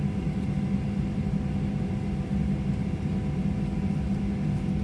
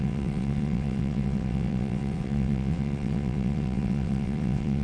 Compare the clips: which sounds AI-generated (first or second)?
second